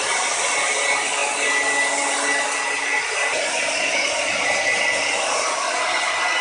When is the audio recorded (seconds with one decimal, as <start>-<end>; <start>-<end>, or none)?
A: 0.0-6.4